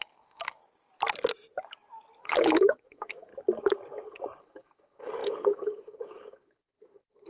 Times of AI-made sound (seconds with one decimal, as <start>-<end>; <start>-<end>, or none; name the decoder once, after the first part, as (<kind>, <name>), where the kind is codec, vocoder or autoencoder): 0.0-0.6 (codec, DAC); 2.2-3.3; 4.4-7.3